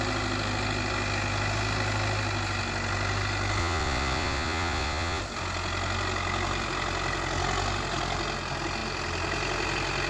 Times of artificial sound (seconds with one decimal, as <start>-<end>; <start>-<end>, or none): 3.6-5.2